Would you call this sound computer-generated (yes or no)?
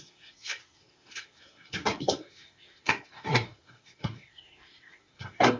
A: yes